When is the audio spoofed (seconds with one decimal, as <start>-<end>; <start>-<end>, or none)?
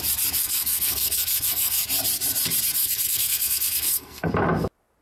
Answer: 0.4-1.8; 2.8-4.3